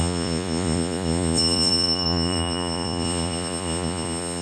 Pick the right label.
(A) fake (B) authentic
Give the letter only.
A